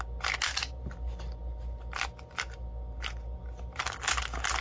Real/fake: real